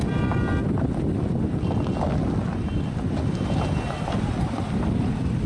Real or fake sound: real